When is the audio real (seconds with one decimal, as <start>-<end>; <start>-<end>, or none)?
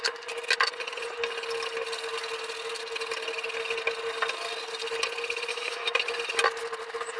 0.0-5.5; 6.0-7.2